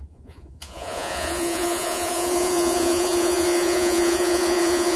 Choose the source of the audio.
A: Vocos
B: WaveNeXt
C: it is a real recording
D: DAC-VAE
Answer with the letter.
A